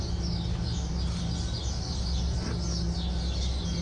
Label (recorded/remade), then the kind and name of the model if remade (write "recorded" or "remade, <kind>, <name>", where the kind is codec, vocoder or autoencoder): recorded